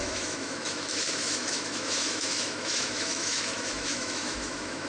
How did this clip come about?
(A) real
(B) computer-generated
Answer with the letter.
B